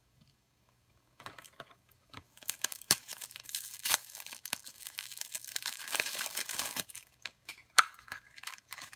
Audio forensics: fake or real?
fake